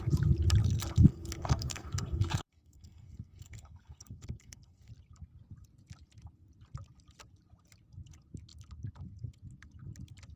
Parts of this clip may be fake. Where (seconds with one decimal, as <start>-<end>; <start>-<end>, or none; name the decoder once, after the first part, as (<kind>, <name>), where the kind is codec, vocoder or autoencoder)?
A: 0.6-4.9 (codec, SNAC)